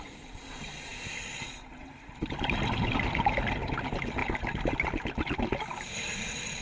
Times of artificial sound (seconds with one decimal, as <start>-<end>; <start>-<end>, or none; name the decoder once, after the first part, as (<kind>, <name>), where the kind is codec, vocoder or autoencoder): none